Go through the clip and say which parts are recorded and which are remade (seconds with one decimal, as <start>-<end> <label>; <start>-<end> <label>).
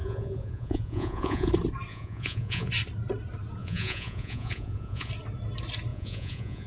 0.0-1.5 remade; 1.5-1.9 recorded; 1.9-2.7 remade; 2.7-3.6 recorded; 3.6-5.1 remade; 5.1-5.9 recorded; 5.9-6.7 remade